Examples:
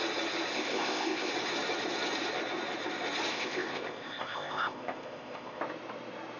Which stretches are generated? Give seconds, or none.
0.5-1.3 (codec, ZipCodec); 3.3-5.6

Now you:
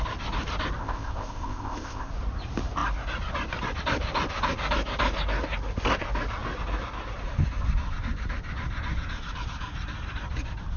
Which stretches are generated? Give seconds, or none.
0.8-2.1 (codec, ZipCodec)

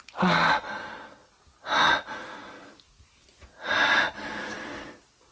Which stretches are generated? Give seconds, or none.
none

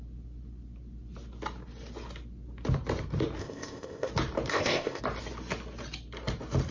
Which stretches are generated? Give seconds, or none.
3.4-4.1 (codec, ZipCodec); 4.5-5.0

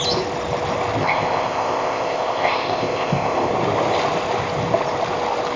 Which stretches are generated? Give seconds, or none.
1.0-3.5 (codec, ZipCodec)

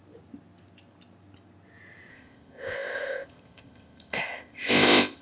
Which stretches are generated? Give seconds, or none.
2.1-5.2 (codec, ZipCodec)

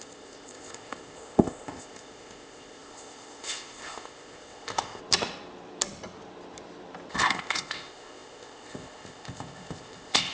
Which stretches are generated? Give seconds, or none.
0.0-5.0 (codec, ZipCodec); 7.1-10.3